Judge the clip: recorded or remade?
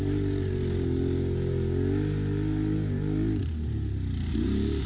recorded